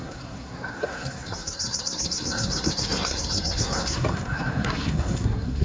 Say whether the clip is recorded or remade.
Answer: remade